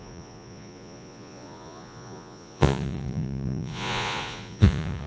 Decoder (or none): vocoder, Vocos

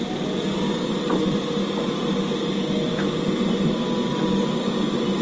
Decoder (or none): none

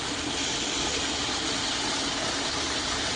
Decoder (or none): none